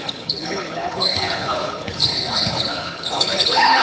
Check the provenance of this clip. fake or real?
fake